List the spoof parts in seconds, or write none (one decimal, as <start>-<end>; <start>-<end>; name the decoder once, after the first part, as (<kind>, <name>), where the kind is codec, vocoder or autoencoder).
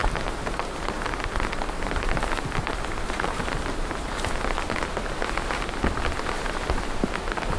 0.0-2.2 (vocoder, BigVGAN v2)